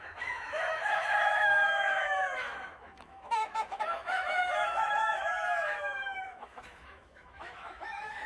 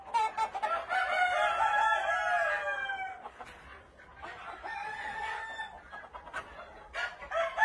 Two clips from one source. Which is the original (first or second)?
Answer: second